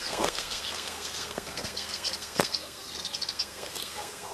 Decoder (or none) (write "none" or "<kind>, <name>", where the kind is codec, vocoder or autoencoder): codec, SNAC